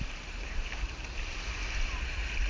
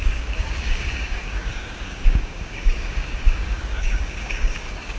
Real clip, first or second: first